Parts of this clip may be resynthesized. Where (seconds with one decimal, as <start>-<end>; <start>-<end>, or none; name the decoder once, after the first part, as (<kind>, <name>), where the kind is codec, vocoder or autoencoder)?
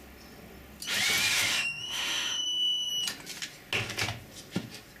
1.3-2.9 (autoencoder, DAC-VAE)